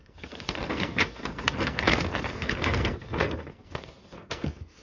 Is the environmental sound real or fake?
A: fake